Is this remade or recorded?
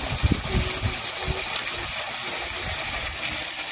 recorded